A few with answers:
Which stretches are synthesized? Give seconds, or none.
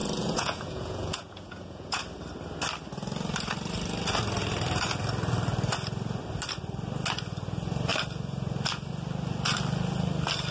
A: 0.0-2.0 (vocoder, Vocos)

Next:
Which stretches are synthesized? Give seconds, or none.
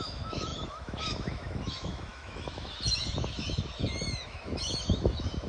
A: 0.0-5.5 (autoencoder, DAC-VAE)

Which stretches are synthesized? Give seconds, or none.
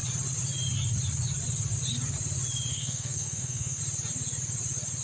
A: 2.7-3.8 (codec, SNAC)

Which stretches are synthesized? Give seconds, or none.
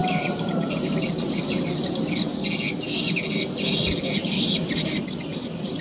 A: 0.0-1.1 (vocoder, BigVGAN v2); 4.2-5.8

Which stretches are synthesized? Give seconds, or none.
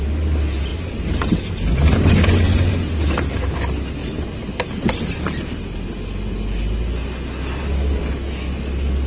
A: none